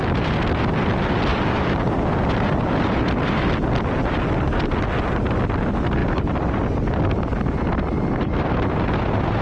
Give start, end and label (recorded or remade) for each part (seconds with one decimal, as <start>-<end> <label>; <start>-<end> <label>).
0.0-1.3 recorded; 1.3-3.5 remade; 3.5-6.0 recorded; 6.0-6.7 remade; 6.7-9.4 recorded